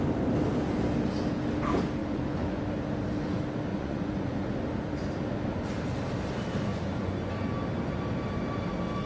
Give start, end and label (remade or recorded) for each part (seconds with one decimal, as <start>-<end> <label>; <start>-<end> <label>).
0.0-2.0 recorded; 2.0-2.6 remade; 2.6-3.7 recorded; 3.7-4.6 remade; 4.6-6.7 recorded; 6.7-7.3 remade; 7.3-9.1 recorded